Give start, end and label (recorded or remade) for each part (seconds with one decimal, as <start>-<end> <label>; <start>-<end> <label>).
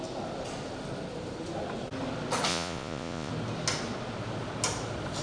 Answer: 0.0-2.5 recorded; 2.5-3.3 remade; 3.3-5.2 recorded